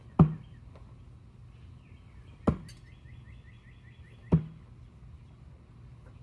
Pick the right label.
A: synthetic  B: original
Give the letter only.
B